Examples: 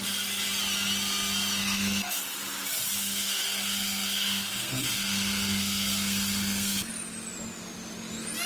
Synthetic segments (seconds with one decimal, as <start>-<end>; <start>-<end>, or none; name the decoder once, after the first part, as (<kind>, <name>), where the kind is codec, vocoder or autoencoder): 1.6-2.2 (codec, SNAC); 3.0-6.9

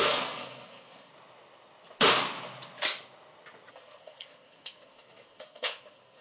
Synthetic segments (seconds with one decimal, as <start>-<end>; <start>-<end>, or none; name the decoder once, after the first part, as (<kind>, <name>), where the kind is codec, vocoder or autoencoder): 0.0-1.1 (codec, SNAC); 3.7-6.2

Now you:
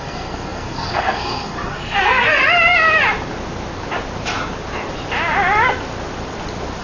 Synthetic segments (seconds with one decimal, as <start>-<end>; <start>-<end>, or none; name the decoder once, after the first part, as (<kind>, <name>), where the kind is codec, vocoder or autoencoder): 0.0-2.4 (codec, SNAC)